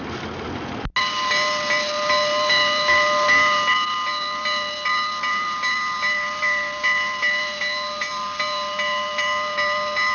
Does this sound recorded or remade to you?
recorded